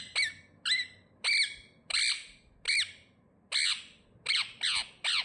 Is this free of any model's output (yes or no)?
yes